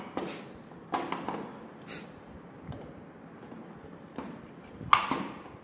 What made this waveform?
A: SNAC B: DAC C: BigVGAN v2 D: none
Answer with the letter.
D